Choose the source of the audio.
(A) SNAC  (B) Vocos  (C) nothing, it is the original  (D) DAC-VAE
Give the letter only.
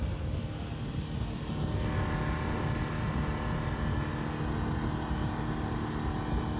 C